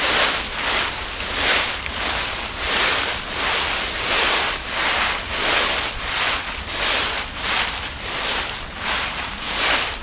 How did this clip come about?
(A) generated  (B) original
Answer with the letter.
A